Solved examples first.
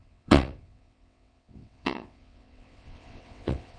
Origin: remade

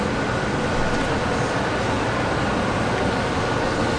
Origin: recorded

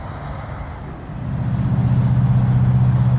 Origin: recorded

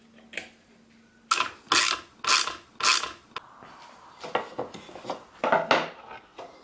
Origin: recorded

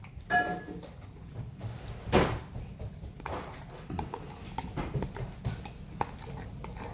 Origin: recorded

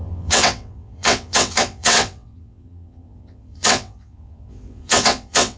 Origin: remade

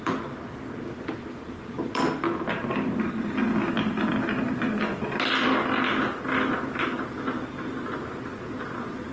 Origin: recorded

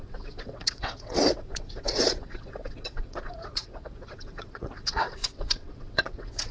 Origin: remade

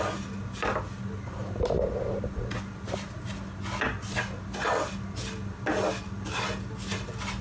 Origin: recorded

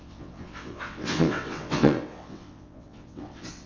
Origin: remade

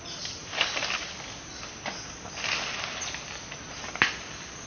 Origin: recorded